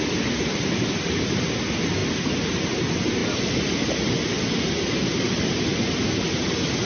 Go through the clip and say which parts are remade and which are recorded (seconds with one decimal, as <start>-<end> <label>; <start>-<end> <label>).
0.0-6.8 recorded